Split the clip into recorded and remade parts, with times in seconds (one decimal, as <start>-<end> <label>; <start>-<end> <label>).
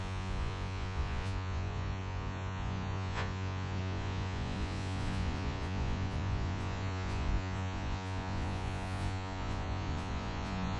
0.0-10.8 remade